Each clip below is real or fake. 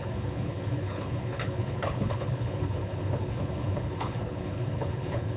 fake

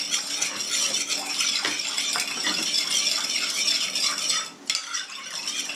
real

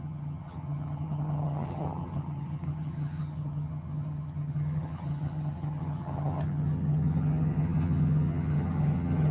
fake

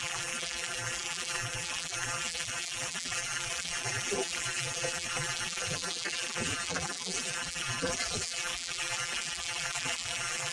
fake